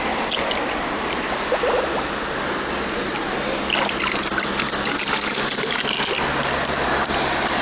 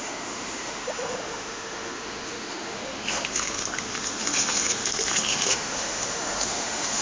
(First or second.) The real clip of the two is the first